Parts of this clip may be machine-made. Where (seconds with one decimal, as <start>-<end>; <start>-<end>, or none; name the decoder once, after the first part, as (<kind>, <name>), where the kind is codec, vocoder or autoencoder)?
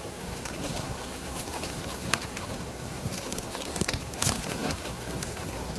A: 0.0-5.8 (codec, SNAC)